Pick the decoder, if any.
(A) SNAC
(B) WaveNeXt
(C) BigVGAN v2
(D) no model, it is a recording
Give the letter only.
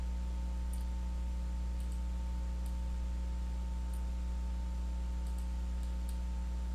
D